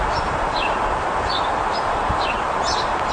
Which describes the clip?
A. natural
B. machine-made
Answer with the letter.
A